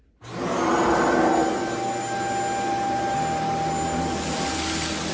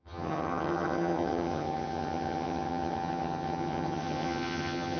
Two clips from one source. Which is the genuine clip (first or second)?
first